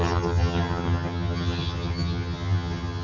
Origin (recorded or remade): remade